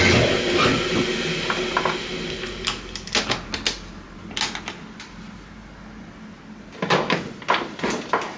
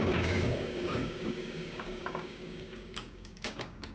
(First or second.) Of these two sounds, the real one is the first